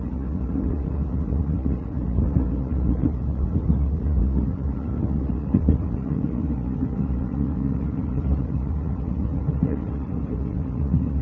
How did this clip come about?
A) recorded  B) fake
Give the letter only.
B